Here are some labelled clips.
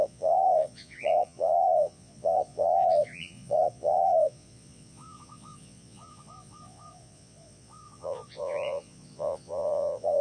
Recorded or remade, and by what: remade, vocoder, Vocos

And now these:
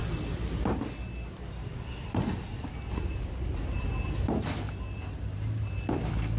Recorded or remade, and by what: recorded